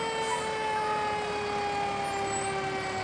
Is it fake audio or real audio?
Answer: real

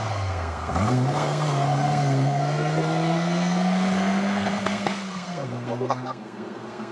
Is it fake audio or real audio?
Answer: fake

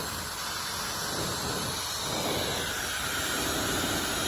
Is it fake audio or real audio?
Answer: real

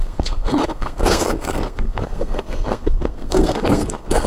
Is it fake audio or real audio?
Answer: fake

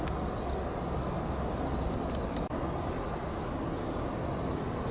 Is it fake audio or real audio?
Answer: real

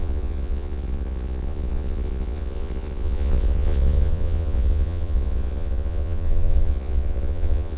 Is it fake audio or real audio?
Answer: fake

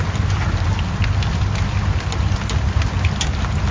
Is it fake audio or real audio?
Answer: real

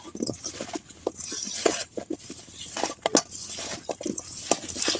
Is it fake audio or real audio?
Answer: real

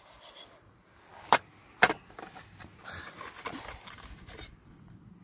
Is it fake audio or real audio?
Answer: real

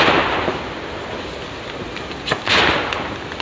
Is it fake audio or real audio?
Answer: real